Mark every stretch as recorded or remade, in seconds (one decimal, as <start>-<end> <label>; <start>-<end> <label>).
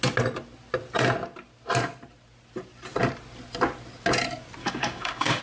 0.0-4.6 recorded; 4.6-5.4 remade